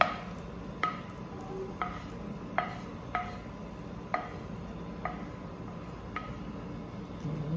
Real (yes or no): yes